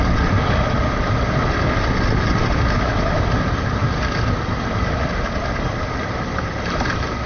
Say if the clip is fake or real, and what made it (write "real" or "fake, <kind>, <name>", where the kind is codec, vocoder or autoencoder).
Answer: fake, vocoder, BigVGAN v2